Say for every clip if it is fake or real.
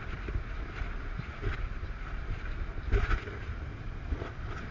real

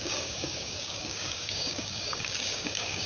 fake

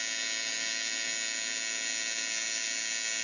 real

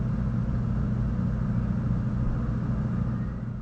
real